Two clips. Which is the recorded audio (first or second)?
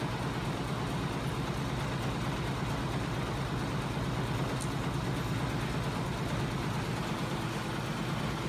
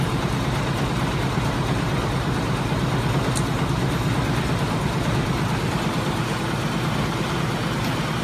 first